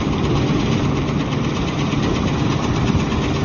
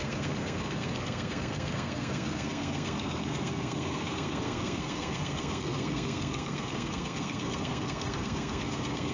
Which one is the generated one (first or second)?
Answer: second